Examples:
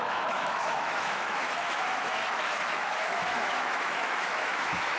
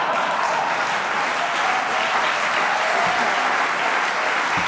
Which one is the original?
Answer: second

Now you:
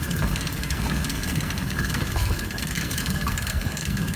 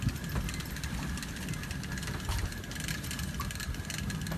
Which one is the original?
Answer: second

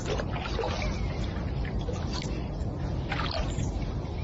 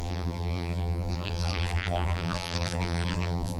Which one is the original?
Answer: first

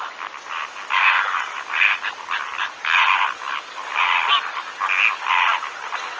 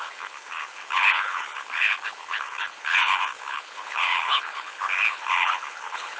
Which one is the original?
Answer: first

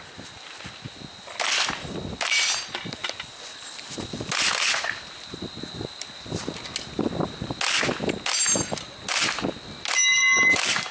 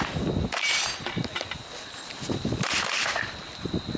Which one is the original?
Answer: first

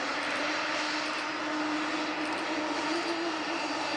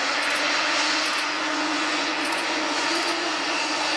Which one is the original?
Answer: first